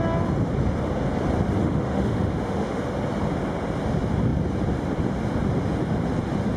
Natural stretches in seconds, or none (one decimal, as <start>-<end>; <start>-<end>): 0.0-1.6; 2.8-6.6